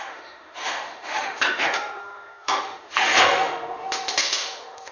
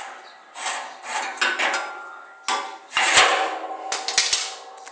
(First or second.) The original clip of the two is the second